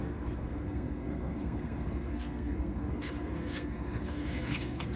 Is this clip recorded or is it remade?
remade